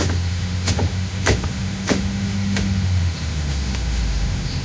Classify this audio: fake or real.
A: fake